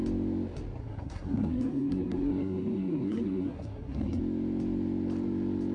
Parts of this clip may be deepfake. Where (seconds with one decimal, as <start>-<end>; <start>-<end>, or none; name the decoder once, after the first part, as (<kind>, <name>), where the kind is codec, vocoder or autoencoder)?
0.8-4.2 (codec, SNAC)